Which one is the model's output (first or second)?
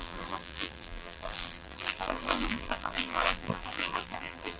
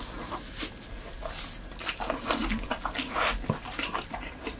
first